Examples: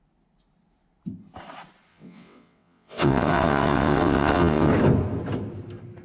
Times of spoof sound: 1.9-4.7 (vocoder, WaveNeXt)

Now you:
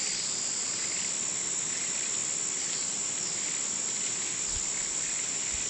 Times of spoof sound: none